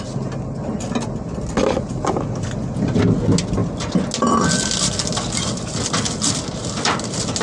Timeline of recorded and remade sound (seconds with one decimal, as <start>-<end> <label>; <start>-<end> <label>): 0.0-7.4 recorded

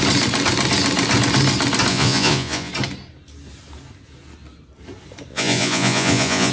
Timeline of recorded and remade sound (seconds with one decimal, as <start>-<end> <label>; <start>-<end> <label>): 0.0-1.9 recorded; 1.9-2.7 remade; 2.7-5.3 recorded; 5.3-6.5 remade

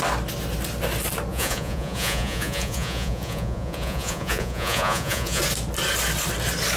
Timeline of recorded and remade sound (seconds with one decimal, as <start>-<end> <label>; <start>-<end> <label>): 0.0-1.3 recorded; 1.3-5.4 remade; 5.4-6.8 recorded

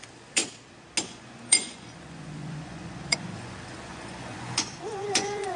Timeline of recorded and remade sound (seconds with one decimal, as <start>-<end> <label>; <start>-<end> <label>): 0.0-0.4 remade; 0.4-1.0 recorded; 1.0-5.6 remade

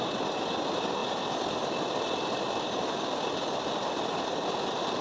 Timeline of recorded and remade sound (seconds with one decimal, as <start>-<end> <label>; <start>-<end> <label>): 0.0-5.0 recorded

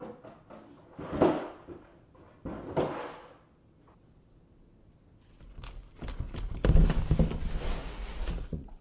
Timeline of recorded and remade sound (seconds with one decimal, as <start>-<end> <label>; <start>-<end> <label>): 0.0-7.8 recorded; 7.8-8.8 remade

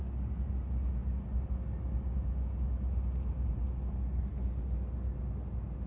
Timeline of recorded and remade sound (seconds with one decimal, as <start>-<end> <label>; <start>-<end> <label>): 0.0-5.9 recorded

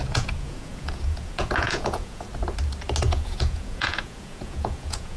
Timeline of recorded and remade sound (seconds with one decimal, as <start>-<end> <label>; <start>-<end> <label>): 0.0-2.3 remade; 2.3-3.0 recorded; 3.0-5.2 remade